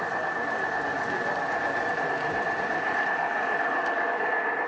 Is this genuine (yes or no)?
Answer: yes